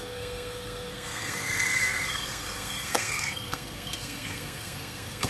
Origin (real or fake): fake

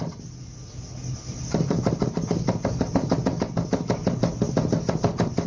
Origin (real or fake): real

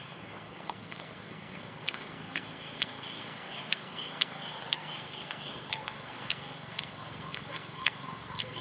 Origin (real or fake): fake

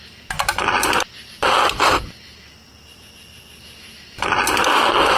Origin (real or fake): real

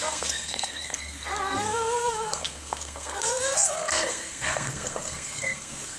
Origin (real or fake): fake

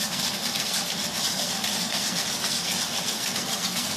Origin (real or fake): fake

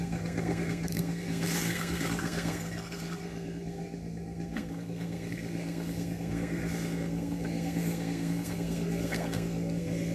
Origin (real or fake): fake